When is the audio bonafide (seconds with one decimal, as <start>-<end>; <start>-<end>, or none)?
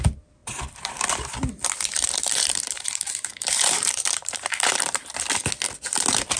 0.0-0.4; 1.3-1.9; 5.1-6.4